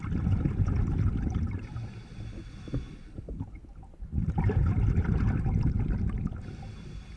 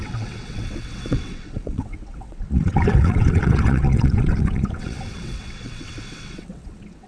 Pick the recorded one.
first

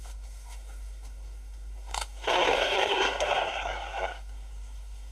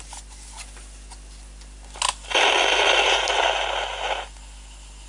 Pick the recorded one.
second